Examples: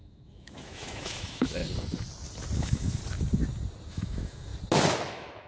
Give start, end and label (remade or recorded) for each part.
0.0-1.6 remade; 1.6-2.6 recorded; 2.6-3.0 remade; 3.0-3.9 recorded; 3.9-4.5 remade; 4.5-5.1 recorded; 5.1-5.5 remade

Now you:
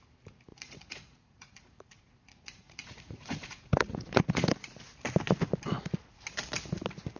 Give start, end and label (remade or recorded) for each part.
0.0-0.5 recorded; 0.5-4.8 remade; 4.8-7.2 recorded

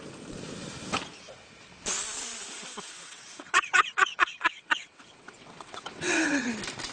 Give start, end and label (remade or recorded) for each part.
0.0-2.4 recorded; 2.4-6.5 remade; 6.5-6.9 recorded

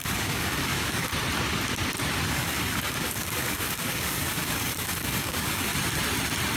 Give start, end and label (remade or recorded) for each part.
0.0-1.1 remade; 1.1-2.3 recorded; 2.3-5.7 remade; 5.7-6.6 recorded

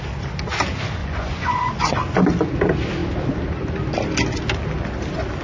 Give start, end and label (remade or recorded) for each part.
0.0-1.0 recorded; 1.0-1.9 remade; 1.9-5.4 recorded

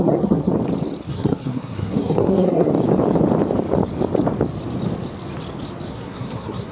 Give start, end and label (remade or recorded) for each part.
0.0-0.5 remade; 0.5-1.1 recorded; 1.1-2.7 remade; 2.7-5.9 recorded; 5.9-6.7 remade

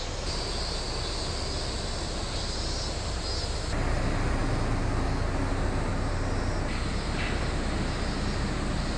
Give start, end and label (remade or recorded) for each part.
0.0-9.0 recorded